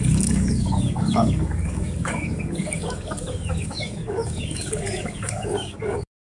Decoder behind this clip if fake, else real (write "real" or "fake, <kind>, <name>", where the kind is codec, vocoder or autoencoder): fake, codec, DAC